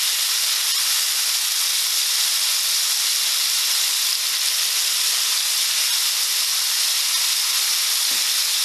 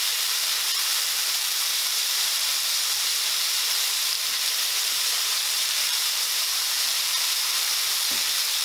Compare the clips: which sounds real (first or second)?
first